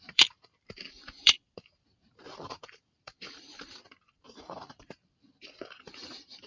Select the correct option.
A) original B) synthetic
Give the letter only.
B